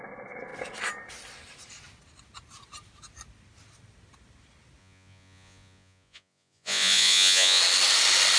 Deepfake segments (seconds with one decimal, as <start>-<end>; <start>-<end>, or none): 4.8-7.6